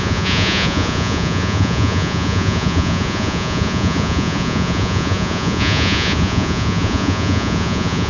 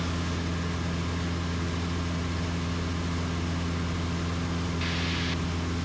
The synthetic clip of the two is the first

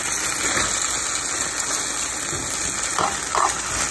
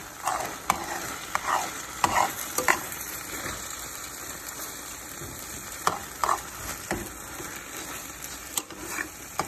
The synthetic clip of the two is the second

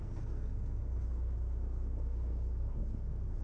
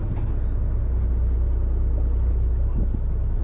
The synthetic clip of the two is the first